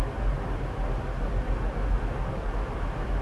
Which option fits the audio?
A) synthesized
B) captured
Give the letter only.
B